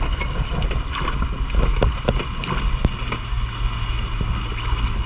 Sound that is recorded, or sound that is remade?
recorded